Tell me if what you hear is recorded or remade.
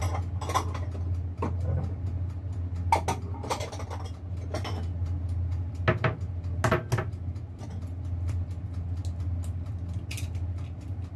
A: recorded